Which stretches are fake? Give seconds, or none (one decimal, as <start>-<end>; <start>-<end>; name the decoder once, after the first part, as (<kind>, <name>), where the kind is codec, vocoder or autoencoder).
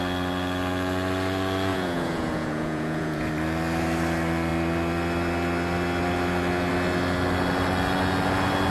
1.7-3.3 (vocoder, Vocos)